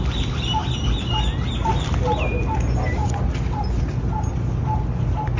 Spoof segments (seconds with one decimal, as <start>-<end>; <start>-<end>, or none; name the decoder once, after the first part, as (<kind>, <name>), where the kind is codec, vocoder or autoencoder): none